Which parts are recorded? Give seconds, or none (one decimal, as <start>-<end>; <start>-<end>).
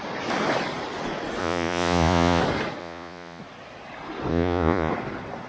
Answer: 0.0-1.4; 2.4-2.8; 3.4-4.3; 4.9-5.5